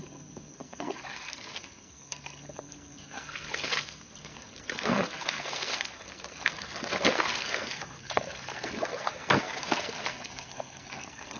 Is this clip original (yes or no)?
no